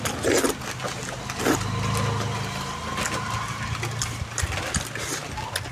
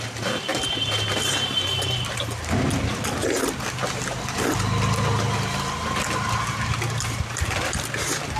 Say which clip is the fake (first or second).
second